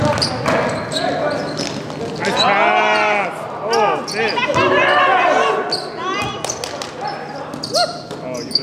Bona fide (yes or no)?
yes